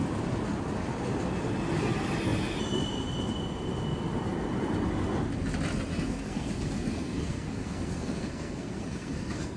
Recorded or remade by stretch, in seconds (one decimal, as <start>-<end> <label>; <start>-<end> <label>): 0.0-5.9 recorded; 5.9-9.6 remade